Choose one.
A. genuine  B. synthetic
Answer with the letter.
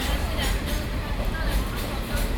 B